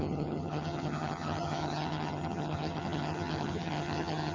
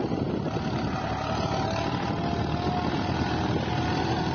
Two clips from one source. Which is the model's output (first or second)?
first